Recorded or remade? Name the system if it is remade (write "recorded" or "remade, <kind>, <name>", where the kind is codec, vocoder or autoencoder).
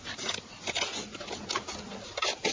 recorded